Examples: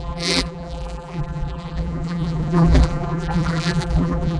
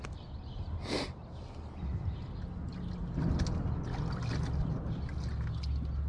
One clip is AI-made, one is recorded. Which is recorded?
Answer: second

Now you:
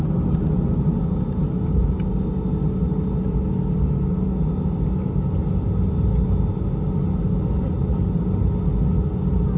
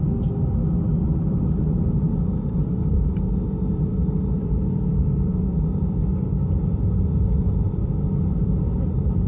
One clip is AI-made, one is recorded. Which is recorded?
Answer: first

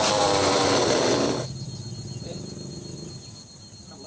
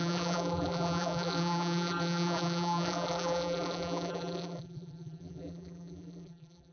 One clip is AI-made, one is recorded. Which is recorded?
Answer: first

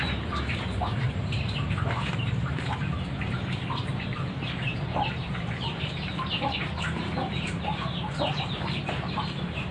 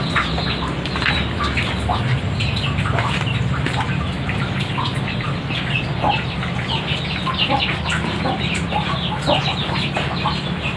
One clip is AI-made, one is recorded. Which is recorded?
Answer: second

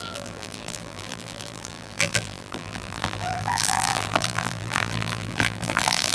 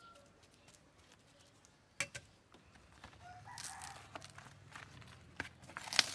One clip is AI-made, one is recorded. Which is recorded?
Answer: second